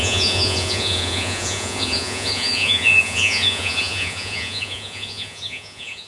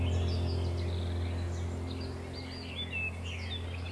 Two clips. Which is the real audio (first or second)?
second